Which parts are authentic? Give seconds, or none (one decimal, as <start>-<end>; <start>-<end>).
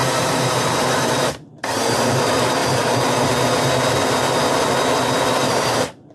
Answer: 2.6-5.3